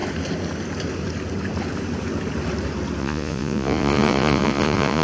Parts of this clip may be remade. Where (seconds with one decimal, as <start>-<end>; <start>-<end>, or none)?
3.0-5.0